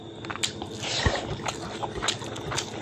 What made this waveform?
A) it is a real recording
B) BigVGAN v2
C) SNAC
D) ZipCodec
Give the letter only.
A